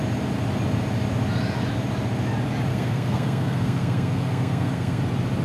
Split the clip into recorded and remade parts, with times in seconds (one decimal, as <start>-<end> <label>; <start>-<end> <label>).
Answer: 0.0-2.7 recorded; 2.7-5.0 remade; 5.0-5.4 recorded